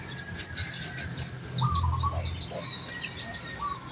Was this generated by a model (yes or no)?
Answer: no